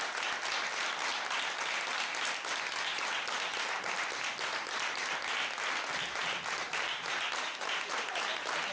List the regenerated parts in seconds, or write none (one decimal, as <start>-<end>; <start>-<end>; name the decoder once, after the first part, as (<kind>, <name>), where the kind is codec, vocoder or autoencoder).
none